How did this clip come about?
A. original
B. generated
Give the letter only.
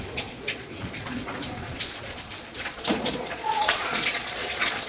B